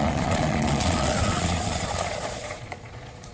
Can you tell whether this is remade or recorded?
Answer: remade